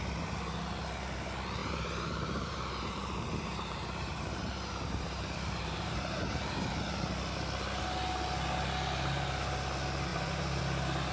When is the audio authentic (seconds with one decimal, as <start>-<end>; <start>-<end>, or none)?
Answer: 0.0-1.6; 6.8-10.1; 10.6-11.1